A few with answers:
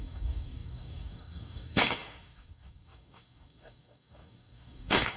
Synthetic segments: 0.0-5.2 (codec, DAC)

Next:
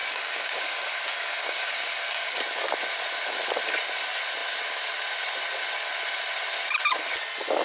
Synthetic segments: 0.0-2.4 (codec, DAC)